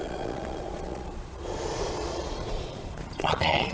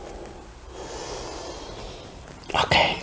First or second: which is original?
second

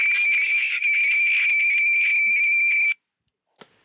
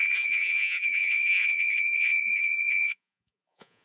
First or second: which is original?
first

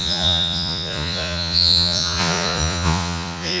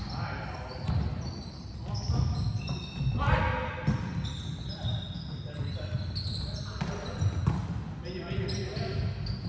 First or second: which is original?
second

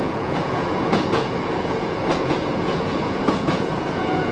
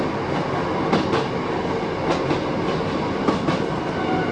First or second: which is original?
second